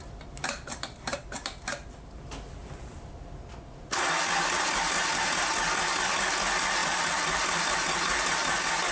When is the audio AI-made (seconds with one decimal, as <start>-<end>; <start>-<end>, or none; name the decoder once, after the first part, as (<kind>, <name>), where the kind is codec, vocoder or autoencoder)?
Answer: none